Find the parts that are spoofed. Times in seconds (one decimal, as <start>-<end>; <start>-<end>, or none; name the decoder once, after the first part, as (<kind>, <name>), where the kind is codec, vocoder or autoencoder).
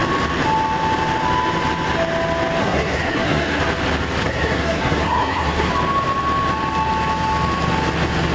2.6-3.6 (codec, SNAC); 4.2-5.7